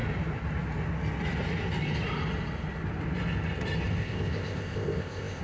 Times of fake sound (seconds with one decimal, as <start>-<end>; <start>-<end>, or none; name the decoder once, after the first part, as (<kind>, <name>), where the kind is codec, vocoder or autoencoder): 4.0-5.4 (codec, ZipCodec)